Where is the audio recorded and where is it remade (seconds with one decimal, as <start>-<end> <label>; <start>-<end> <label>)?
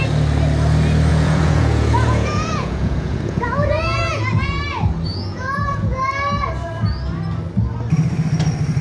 0.0-1.1 recorded; 1.1-4.6 remade; 4.6-5.1 recorded; 5.1-6.0 remade; 6.0-8.8 recorded